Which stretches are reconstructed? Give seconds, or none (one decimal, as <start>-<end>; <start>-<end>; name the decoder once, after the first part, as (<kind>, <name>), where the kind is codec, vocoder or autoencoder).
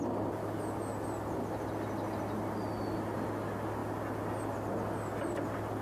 none